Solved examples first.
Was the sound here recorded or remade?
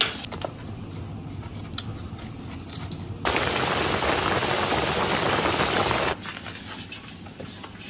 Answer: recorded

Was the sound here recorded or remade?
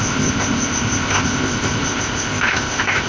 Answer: remade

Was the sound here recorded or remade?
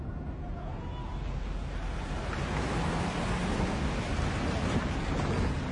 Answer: recorded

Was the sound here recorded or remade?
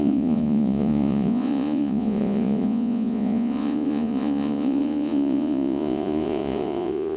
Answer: remade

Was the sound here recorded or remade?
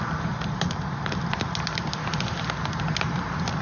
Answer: recorded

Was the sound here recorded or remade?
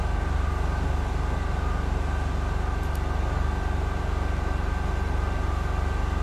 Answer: recorded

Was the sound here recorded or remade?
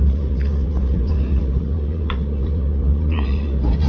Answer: remade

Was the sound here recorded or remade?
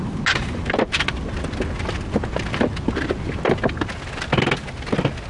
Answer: recorded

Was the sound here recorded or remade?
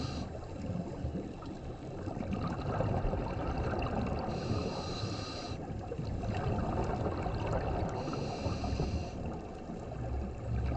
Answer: recorded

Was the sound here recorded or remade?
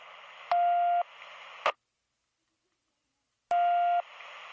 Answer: recorded